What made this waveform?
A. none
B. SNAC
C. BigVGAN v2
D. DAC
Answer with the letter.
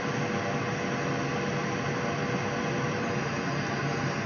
A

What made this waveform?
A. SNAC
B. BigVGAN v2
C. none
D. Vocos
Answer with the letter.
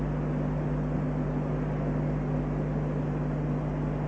C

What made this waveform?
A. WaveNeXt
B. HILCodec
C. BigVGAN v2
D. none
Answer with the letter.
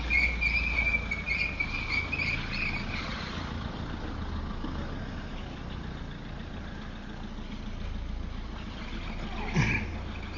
D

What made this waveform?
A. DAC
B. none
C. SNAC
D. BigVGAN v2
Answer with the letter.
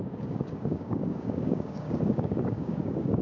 A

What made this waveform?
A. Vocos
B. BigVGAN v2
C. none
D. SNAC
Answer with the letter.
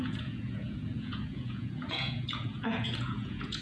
A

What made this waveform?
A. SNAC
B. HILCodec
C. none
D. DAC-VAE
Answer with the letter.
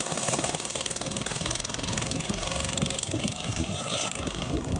A